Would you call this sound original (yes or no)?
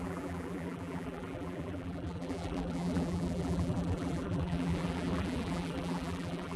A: no